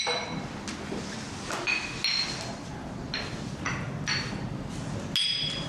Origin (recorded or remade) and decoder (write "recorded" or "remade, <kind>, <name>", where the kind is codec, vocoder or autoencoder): recorded